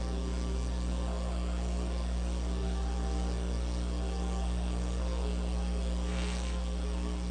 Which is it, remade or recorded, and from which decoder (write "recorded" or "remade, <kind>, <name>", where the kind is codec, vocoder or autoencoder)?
remade, codec, SNAC